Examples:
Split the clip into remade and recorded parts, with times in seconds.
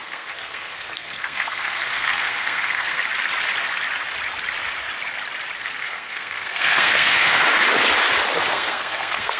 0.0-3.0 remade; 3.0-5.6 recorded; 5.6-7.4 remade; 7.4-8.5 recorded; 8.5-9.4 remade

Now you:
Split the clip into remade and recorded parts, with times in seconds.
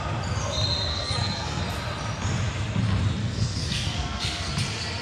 0.0-0.9 recorded; 0.9-1.6 remade; 1.6-3.2 recorded; 3.2-4.5 remade; 4.5-5.0 recorded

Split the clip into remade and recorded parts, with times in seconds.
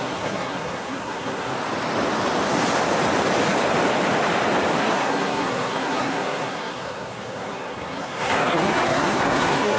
0.0-1.5 remade; 1.5-4.8 recorded; 4.8-9.8 remade